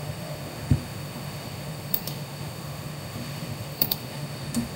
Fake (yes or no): yes